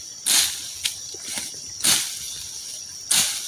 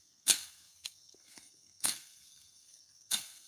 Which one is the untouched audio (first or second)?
first